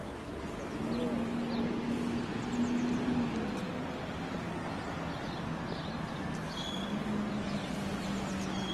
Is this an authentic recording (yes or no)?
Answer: yes